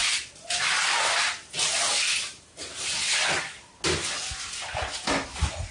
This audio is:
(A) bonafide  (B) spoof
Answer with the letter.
A